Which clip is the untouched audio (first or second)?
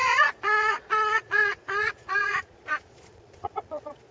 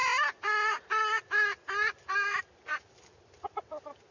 second